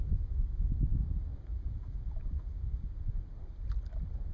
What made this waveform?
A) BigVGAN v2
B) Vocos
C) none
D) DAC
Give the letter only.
C